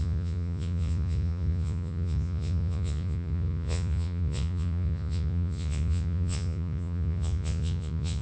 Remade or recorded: remade